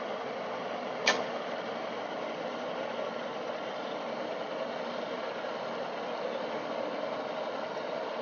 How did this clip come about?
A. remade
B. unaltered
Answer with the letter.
B